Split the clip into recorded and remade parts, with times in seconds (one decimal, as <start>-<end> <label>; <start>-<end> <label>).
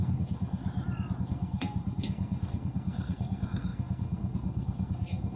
0.0-0.6 remade; 0.6-1.2 recorded; 1.2-5.4 remade